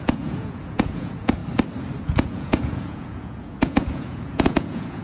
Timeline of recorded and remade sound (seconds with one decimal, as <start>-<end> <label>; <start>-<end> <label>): 0.0-1.4 remade; 1.4-2.0 recorded; 2.0-5.0 remade